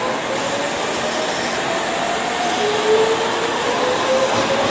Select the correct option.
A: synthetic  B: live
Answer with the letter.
B